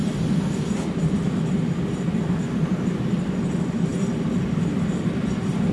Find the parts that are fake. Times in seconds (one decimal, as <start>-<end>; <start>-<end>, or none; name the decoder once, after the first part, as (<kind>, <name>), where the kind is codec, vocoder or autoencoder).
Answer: none